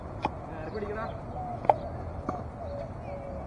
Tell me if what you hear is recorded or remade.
recorded